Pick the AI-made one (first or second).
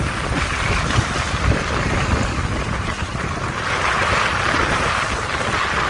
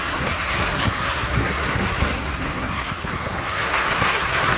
second